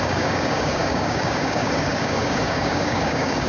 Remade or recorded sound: remade